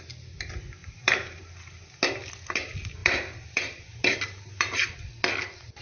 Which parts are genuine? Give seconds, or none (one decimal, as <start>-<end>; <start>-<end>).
0.0-0.8; 1.4-3.0; 5.1-5.8